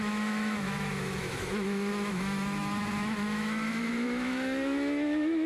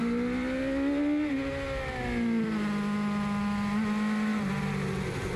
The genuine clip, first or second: second